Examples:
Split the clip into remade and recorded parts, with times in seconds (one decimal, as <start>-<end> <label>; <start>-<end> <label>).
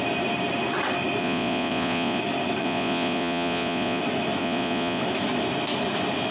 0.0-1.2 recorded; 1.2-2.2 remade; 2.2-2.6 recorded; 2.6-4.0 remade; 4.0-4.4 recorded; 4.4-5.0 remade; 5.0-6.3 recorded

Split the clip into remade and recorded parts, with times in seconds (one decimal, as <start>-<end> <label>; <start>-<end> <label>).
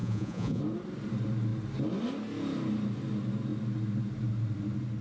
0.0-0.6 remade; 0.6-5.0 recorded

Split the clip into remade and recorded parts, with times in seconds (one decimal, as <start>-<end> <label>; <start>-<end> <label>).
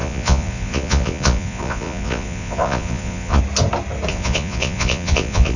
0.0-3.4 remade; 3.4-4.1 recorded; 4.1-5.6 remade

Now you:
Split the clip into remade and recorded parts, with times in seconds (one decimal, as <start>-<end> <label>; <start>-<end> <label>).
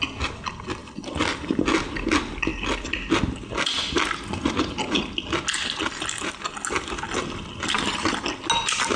0.0-9.0 recorded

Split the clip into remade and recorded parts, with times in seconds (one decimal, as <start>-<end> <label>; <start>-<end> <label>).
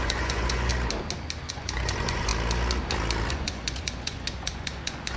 0.0-0.7 remade; 0.7-1.5 recorded; 1.5-2.3 remade; 2.3-3.3 recorded; 3.3-5.2 remade